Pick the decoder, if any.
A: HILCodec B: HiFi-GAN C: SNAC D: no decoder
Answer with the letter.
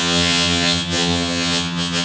B